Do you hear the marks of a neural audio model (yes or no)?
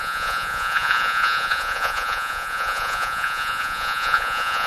yes